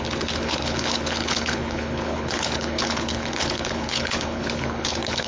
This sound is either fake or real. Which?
fake